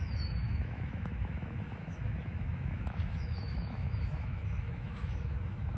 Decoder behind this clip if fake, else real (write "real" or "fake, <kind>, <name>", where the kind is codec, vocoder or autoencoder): fake, autoencoder, DAC-VAE